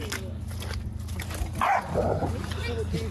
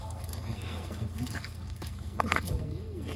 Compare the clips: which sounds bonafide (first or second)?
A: first